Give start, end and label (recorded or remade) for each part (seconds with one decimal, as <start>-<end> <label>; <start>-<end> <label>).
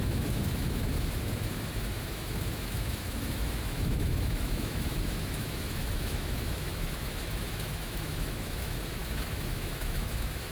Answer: 0.0-10.5 remade